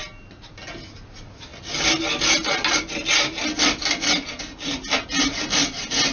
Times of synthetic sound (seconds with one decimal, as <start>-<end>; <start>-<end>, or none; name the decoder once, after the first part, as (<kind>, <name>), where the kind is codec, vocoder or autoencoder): none